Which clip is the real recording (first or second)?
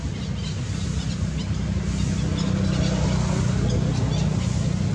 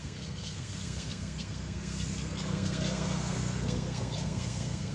first